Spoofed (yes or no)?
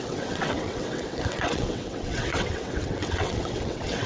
yes